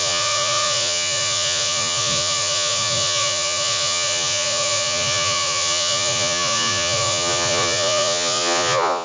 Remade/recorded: remade